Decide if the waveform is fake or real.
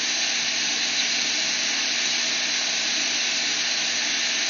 real